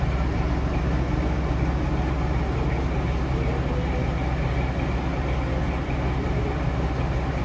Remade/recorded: recorded